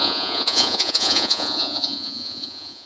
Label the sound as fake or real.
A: fake